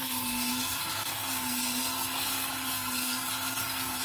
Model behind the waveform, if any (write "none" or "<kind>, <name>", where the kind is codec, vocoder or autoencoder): codec, SNAC